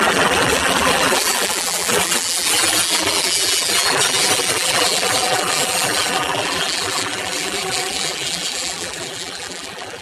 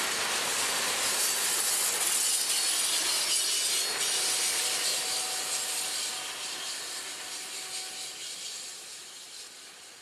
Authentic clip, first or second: second